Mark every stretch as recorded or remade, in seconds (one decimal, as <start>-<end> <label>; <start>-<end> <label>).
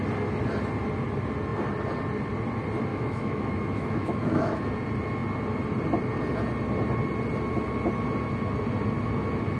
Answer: 0.0-2.9 recorded; 2.9-4.6 remade; 4.6-9.6 recorded